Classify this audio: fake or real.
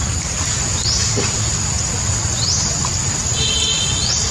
real